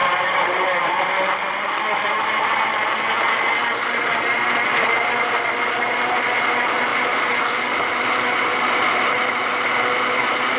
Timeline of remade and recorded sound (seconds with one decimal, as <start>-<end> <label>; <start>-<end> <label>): 0.0-1.1 remade; 1.1-6.9 recorded; 6.9-7.6 remade; 7.6-10.6 recorded